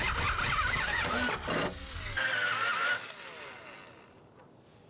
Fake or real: real